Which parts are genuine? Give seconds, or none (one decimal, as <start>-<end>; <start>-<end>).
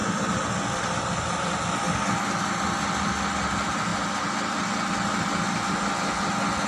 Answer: 0.0-3.9; 5.7-6.7